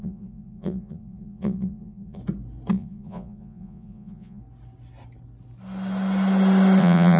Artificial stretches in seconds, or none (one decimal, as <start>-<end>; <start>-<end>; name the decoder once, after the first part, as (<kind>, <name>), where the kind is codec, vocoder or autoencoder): 0.0-2.2 (vocoder, Vocos); 2.7-4.4; 6.8-7.2

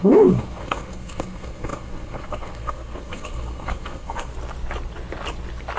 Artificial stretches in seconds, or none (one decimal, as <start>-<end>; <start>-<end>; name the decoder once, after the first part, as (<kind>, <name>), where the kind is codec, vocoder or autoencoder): 0.0-4.3 (codec, SNAC)

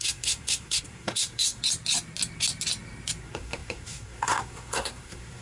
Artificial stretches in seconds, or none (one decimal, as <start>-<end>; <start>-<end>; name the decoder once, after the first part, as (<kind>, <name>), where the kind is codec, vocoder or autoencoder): 0.0-1.6 (codec, SNAC); 3.2-5.4

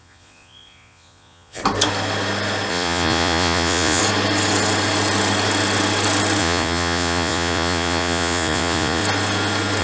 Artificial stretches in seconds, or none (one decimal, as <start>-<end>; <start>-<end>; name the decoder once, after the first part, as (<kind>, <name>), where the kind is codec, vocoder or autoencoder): 0.0-1.6 (vocoder, Vocos); 2.7-4.0; 6.4-9.0

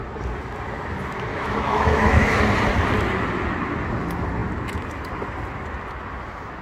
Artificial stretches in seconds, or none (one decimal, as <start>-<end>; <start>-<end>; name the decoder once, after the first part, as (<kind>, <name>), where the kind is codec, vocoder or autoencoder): 1.3-2.4 (autoencoder, DAC-VAE)